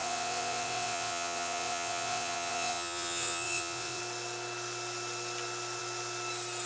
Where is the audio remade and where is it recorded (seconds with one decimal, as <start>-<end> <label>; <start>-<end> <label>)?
0.0-4.0 remade; 4.0-6.7 recorded

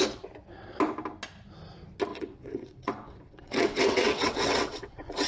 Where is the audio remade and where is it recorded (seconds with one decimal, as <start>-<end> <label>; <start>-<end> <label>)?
0.0-2.1 recorded; 2.1-5.3 remade

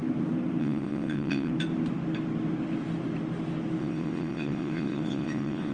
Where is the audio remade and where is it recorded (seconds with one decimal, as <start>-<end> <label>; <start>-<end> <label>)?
0.0-0.6 recorded; 0.6-1.5 remade; 1.5-3.8 recorded; 3.8-5.7 remade

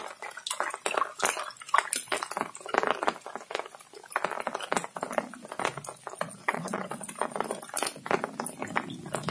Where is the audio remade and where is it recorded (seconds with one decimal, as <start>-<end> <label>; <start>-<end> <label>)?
0.0-6.4 recorded; 6.4-7.0 remade; 7.0-9.3 recorded

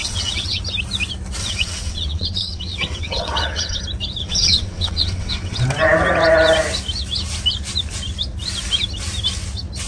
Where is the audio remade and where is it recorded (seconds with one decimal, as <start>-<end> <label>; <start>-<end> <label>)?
0.0-0.6 remade; 0.6-1.4 recorded; 1.4-3.8 remade; 3.8-4.2 recorded; 4.2-5.6 remade; 5.6-9.9 recorded

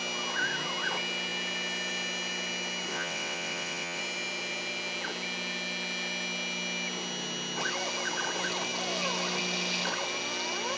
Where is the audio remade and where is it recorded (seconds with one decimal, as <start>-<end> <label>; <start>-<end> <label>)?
0.0-2.9 recorded; 2.9-4.0 remade; 4.0-10.8 recorded

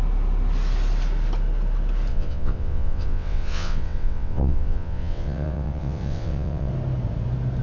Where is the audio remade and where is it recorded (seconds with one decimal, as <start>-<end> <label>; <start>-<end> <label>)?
0.0-2.1 recorded; 2.1-6.7 remade; 6.7-7.6 recorded